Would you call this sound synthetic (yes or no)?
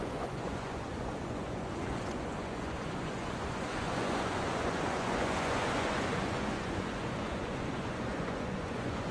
yes